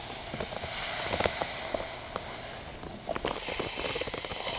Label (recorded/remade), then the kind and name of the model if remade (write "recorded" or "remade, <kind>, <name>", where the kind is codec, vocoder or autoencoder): recorded